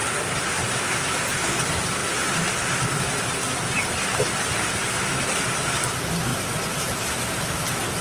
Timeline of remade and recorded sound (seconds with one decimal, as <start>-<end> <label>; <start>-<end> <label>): 0.0-8.0 recorded